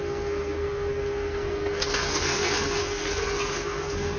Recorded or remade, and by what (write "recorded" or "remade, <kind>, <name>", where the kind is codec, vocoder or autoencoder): remade, codec, SNAC